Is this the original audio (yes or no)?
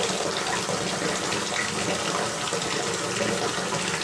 yes